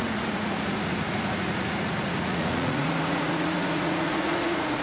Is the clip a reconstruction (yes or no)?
yes